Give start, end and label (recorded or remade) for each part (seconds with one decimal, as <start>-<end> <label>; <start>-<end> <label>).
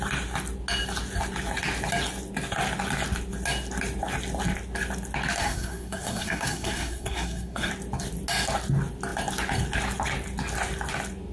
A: 0.0-5.4 recorded; 5.4-7.7 remade; 7.7-11.3 recorded